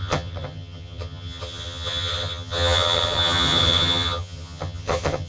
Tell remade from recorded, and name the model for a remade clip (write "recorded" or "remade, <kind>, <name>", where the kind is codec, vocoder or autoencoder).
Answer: remade, vocoder, HiFi-GAN